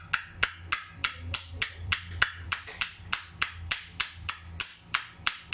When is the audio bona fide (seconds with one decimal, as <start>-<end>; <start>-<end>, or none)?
0.0-1.0; 4.3-4.7